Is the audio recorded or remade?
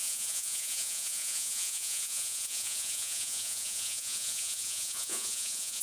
remade